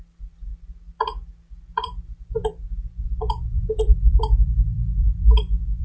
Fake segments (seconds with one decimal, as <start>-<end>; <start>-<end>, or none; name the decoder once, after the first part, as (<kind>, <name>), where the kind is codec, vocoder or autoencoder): 0.0-0.5 (vocoder, BigVGAN v2); 1.5-2.4; 3.4-5.8